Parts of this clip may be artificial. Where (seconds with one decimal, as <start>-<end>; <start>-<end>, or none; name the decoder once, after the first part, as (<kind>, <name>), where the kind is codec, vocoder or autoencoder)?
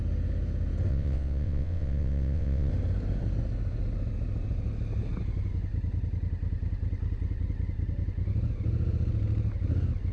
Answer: 0.9-2.7 (vocoder, WaveNeXt)